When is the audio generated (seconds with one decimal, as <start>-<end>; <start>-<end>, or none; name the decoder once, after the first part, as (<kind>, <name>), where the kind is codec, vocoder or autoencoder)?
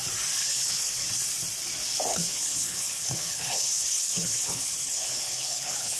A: 0.4-1.1 (codec, HILCodec); 2.1-6.0